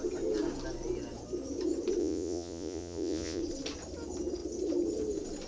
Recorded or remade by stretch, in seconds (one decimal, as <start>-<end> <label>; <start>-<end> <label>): 0.0-2.0 recorded; 2.0-3.4 remade; 3.4-5.5 recorded